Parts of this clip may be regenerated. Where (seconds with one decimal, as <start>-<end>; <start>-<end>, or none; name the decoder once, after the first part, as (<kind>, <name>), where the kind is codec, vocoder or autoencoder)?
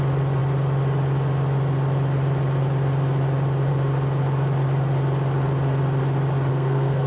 6.5-7.1 (codec, SNAC)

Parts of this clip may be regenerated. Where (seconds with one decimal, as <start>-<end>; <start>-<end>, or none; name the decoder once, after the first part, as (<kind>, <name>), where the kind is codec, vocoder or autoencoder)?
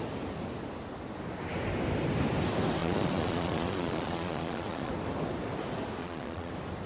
2.8-4.9 (vocoder, Vocos); 6.0-6.5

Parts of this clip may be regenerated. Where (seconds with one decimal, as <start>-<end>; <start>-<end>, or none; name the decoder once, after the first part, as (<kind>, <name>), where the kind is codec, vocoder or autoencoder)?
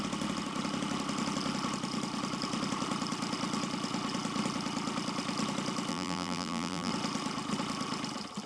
5.9-6.9 (vocoder, BigVGAN v2)